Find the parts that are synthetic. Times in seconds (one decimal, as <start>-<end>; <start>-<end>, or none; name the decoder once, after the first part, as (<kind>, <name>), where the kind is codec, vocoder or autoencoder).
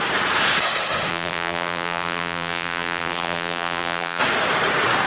1.1-4.2 (vocoder, BigVGAN v2)